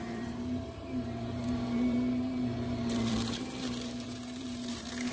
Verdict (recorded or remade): remade